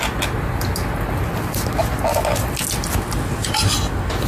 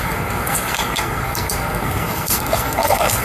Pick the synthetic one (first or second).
second